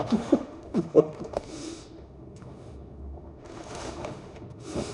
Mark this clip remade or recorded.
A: remade